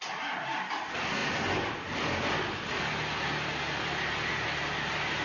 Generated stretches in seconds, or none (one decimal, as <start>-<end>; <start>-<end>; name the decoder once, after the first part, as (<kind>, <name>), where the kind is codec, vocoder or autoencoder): none